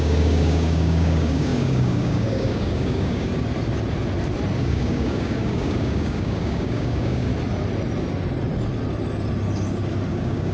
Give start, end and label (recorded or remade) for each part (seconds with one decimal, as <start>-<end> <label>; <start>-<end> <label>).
0.0-3.3 remade; 3.3-4.6 recorded; 4.6-7.3 remade; 7.3-10.1 recorded; 10.1-10.5 remade